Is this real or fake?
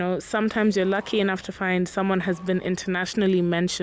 real